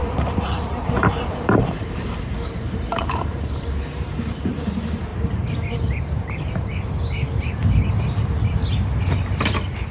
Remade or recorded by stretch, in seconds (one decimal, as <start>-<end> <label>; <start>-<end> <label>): 0.0-4.6 remade; 4.6-5.1 recorded; 5.1-6.5 remade; 6.5-9.9 recorded